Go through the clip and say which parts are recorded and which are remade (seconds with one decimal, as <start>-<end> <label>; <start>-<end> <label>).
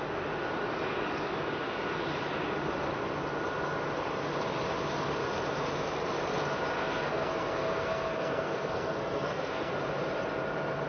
0.0-6.8 recorded; 6.8-9.7 remade; 9.7-10.9 recorded